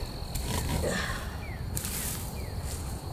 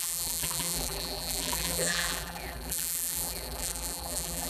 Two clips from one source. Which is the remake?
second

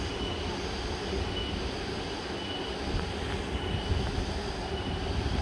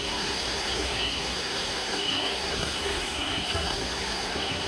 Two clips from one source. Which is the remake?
second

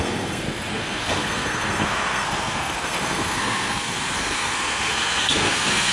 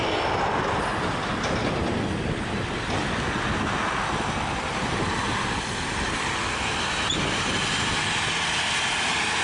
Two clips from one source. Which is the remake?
first